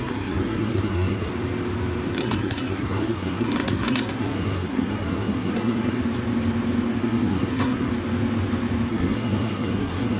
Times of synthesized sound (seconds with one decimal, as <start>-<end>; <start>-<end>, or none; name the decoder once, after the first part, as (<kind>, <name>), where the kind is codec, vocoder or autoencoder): 0.0-1.3 (codec, SNAC); 2.1-6.0; 7.0-7.9; 8.9-10.2